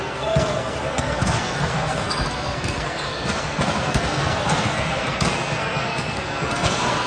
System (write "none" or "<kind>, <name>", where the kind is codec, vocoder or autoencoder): codec, SNAC